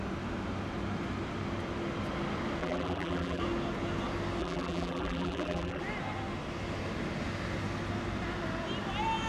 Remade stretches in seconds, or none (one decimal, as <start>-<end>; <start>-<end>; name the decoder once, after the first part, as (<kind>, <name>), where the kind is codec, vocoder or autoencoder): 2.6-3.4 (vocoder, BigVGAN v2); 4.4-5.8